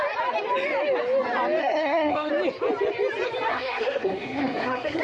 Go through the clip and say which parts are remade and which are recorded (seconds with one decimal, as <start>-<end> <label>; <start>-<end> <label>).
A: 0.0-1.6 recorded; 1.6-2.3 remade; 2.3-3.5 recorded; 3.5-5.0 remade